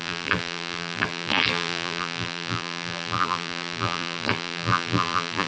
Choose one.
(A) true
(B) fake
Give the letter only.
B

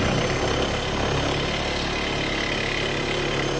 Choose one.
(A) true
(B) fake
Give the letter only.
A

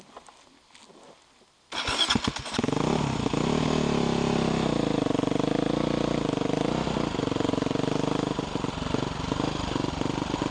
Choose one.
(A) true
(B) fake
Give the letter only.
A